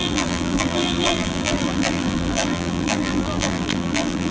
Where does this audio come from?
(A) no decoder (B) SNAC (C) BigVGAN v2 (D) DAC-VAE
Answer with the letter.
C